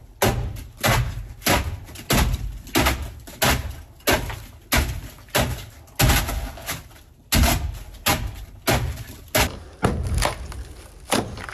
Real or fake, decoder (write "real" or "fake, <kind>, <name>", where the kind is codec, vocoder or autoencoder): real